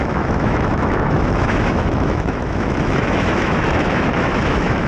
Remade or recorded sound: remade